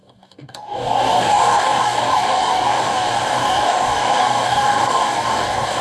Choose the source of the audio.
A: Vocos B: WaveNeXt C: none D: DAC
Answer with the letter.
D